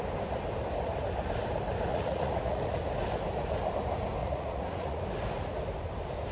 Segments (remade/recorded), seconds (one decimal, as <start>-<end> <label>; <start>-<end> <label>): 0.0-1.9 recorded; 1.9-2.8 remade; 2.8-4.2 recorded; 4.2-5.0 remade; 5.0-6.3 recorded